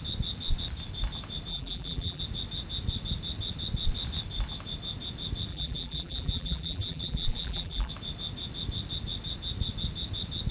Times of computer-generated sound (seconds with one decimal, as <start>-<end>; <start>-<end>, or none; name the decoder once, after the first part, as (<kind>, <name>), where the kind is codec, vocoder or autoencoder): 1.5-2.2 (vocoder, BigVGAN v2); 5.5-7.9